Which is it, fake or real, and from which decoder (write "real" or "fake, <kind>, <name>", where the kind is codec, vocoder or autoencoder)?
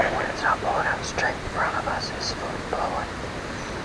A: real